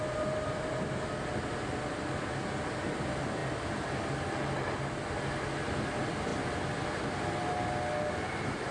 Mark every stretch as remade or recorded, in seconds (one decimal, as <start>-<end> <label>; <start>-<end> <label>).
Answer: 0.0-3.4 recorded; 3.4-4.1 remade; 4.1-8.7 recorded